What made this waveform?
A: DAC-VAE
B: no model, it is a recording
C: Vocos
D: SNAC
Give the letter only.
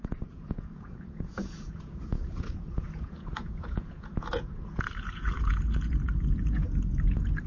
C